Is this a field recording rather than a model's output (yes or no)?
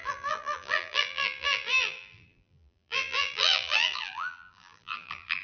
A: no